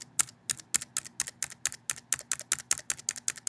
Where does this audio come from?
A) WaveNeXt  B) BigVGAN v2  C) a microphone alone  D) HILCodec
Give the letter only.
C